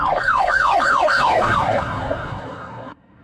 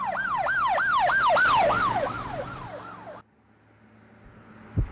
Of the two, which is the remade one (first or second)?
first